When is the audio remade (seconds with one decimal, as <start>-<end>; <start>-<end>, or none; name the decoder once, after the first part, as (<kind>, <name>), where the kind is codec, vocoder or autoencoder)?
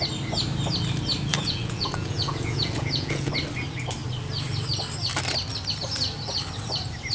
1.3-3.3 (vocoder, Vocos)